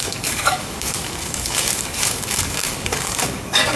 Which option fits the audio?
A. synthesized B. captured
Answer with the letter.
A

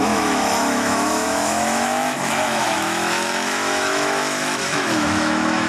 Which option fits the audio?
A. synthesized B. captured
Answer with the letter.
A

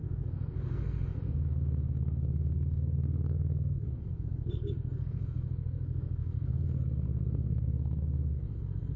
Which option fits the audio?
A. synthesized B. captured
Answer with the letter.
A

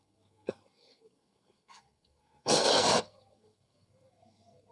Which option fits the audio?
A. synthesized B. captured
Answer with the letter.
A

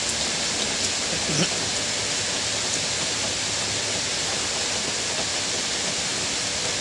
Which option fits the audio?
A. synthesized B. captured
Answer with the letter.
B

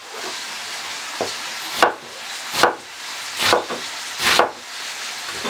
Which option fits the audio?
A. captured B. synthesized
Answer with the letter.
A